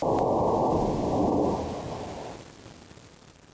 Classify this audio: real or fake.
real